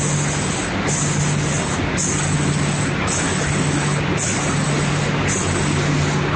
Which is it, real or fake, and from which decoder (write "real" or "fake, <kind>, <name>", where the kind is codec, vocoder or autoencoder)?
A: real